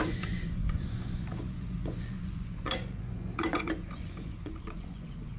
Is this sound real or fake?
fake